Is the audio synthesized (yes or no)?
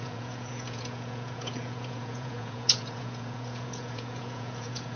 yes